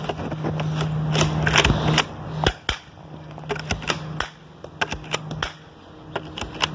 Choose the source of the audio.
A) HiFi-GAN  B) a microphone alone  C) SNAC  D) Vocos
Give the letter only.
B